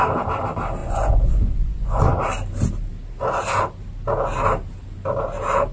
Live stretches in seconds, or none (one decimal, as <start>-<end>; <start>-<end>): 0.0-0.8; 2.2-5.7